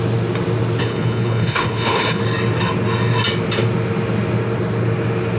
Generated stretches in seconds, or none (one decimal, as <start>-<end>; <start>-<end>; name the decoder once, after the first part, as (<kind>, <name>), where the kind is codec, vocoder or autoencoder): 0.8-2.2 (codec, HILCodec)